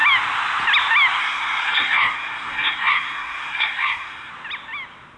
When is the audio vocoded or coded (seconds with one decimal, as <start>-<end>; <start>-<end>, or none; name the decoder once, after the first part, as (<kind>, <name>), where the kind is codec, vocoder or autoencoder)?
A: 1.2-4.3 (codec, SNAC)